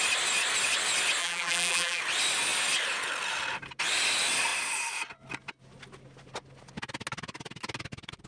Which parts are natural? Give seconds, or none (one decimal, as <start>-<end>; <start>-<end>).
0.0-1.2; 2.0-8.3